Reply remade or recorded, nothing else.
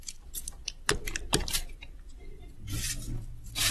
remade